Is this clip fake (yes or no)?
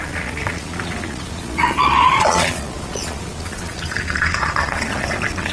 yes